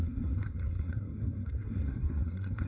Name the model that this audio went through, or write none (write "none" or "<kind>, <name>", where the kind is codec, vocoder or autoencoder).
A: codec, SNAC